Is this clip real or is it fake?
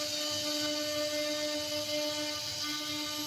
real